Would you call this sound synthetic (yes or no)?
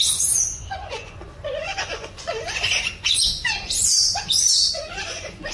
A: yes